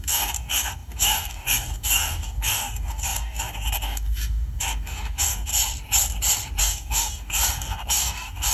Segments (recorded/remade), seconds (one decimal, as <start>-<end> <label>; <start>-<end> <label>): 0.0-5.5 remade; 5.5-6.6 recorded; 6.6-8.5 remade